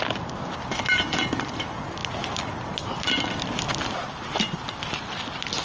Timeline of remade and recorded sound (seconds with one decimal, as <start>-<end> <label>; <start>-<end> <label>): 0.0-5.6 recorded

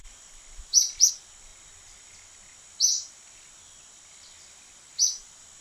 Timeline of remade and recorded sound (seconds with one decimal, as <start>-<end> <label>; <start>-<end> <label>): 0.0-1.1 remade; 1.1-5.6 recorded

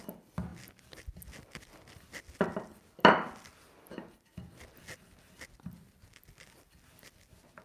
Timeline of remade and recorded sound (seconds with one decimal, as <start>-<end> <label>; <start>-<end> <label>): 0.0-7.6 recorded

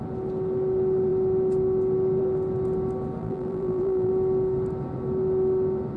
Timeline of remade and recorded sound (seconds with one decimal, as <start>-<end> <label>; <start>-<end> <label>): 0.0-3.2 recorded; 3.2-4.1 remade; 4.1-6.0 recorded

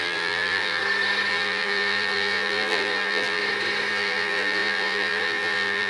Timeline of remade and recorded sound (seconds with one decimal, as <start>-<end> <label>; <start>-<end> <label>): 0.0-0.8 remade; 0.8-1.3 recorded; 1.3-3.4 remade; 3.4-3.9 recorded; 3.9-5.9 remade

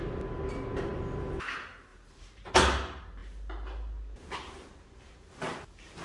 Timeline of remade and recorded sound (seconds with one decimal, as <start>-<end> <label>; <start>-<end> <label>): 0.0-1.9 recorded; 1.9-2.5 remade; 2.5-6.0 recorded